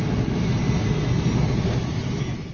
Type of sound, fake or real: real